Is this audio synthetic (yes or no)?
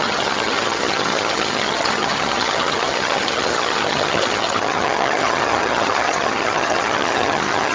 yes